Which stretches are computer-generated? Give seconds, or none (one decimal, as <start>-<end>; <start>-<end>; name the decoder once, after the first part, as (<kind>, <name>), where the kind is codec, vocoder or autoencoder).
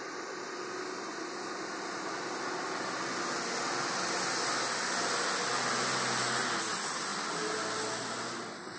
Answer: none